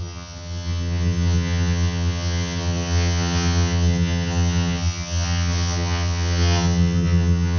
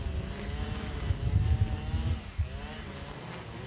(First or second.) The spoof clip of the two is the first